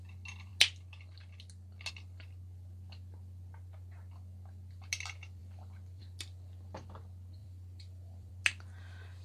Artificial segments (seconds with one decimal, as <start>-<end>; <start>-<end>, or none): 7.4-8.4